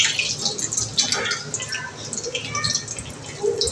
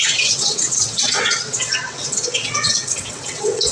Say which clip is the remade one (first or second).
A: second